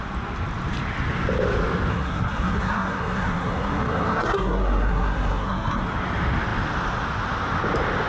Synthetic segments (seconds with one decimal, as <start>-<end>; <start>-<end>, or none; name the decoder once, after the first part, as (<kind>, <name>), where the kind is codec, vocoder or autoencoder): 1.9-5.8 (codec, SNAC)